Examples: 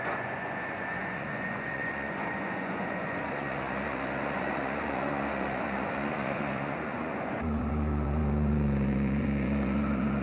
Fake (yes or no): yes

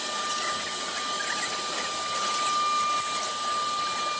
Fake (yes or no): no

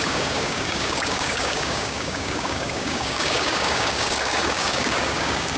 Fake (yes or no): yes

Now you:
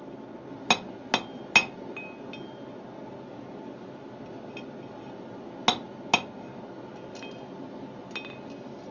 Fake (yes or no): no